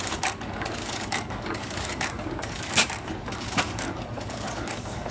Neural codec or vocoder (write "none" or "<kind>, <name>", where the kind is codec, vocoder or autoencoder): codec, DAC